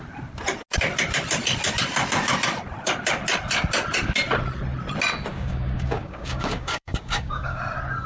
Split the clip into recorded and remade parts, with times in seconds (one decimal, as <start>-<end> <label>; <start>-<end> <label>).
0.0-5.3 recorded; 5.3-7.6 remade; 7.6-8.1 recorded